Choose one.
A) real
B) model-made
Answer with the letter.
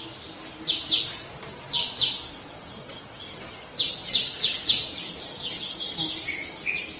A